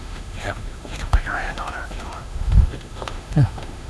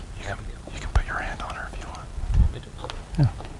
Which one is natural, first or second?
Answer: second